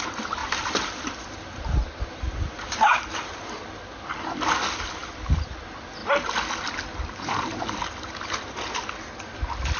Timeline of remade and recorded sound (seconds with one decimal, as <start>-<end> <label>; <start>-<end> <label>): 0.0-0.4 recorded; 0.4-3.6 remade; 3.6-9.8 recorded